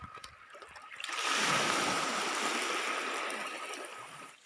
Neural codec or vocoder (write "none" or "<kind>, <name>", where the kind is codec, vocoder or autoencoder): none